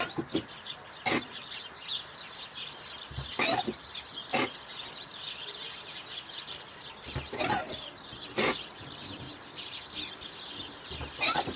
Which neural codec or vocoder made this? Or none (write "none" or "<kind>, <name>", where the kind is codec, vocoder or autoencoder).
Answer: none